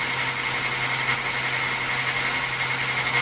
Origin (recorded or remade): recorded